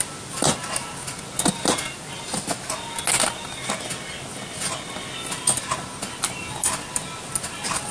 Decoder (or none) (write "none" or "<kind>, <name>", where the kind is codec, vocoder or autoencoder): none